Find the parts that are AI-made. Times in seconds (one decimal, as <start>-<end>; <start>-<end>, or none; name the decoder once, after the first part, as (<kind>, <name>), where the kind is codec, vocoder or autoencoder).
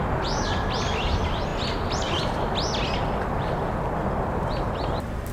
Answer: none